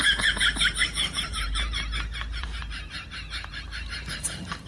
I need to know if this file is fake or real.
fake